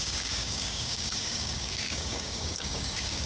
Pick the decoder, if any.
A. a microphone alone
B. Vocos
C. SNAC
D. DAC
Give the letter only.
D